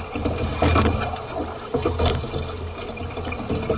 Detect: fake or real real